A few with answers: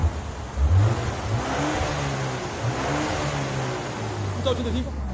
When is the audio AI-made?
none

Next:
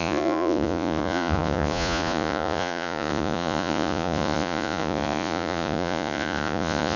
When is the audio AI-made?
0.0-7.0 (vocoder, Vocos)